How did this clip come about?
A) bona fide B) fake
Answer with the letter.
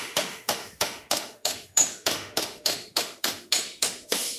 B